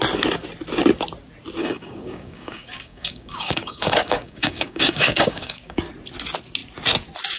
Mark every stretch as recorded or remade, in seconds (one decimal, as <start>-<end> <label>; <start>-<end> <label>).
0.0-1.6 recorded; 1.6-5.8 remade; 5.8-7.4 recorded